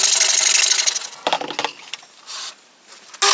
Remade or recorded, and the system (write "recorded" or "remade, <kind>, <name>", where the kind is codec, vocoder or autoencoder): recorded